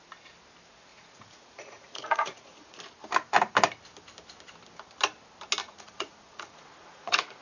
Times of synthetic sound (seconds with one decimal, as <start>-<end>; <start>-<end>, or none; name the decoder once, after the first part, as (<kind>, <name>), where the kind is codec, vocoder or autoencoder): 0.9-2.8 (vocoder, Vocos); 5.6-7.4